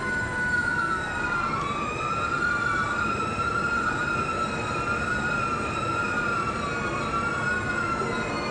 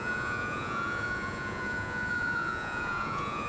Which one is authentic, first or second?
first